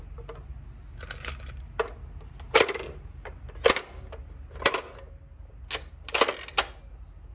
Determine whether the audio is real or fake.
real